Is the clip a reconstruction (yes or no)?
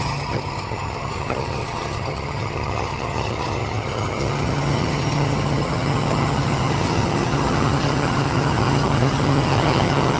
yes